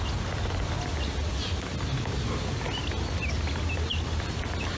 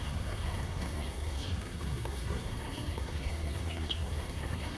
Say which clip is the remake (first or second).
second